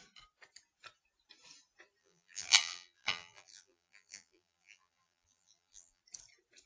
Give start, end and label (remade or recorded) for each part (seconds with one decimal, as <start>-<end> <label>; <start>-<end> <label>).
0.0-2.0 recorded; 2.0-6.0 remade; 6.0-6.7 recorded